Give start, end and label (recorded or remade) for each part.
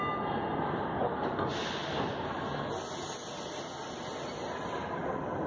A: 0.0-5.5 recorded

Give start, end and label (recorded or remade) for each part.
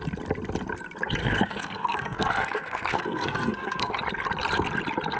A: 0.0-1.2 recorded; 1.2-3.9 remade; 3.9-5.2 recorded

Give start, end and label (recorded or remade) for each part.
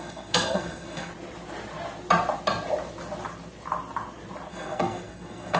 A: 0.0-1.1 remade; 1.1-4.5 recorded; 4.5-5.6 remade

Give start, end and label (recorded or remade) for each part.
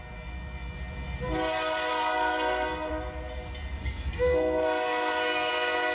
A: 0.0-1.9 recorded; 1.9-2.9 remade; 2.9-3.8 recorded; 3.8-5.5 remade; 5.5-5.9 recorded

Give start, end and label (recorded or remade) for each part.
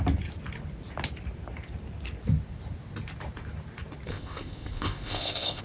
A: 0.0-4.1 recorded; 4.1-5.6 remade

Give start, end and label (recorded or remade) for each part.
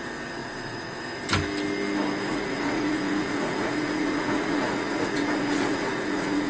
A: 0.0-0.4 recorded; 0.4-1.0 remade; 1.0-2.3 recorded; 2.3-6.5 remade